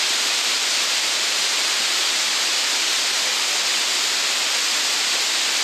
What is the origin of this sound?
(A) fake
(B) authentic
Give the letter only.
B